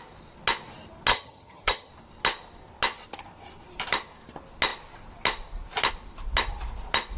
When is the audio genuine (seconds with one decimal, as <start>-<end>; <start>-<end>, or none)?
0.0-1.1; 1.9-7.2